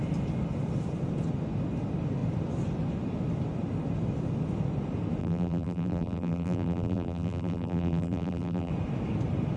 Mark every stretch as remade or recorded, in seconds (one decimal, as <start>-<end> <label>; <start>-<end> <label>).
0.0-5.2 recorded; 5.2-8.7 remade; 8.7-9.6 recorded